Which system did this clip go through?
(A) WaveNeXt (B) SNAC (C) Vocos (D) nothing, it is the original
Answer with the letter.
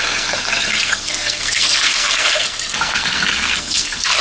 B